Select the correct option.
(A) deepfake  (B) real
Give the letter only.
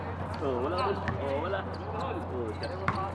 B